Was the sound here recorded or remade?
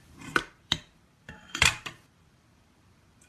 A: remade